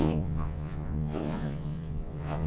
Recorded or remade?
remade